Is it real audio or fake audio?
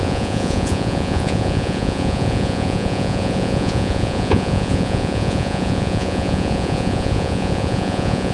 fake